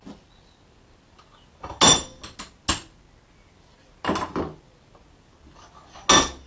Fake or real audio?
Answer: real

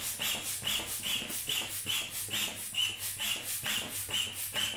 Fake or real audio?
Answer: real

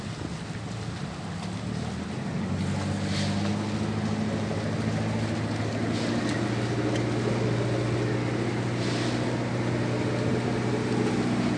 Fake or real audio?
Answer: real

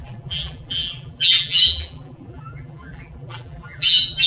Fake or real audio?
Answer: fake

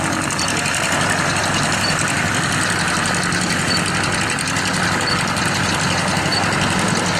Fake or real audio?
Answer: real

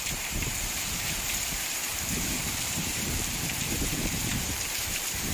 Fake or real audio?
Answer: fake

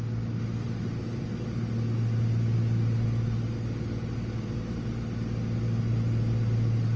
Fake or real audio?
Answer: real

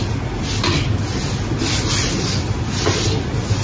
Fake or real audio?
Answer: real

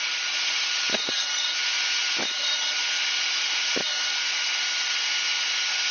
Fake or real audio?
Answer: real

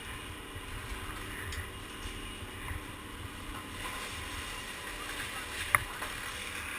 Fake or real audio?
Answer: real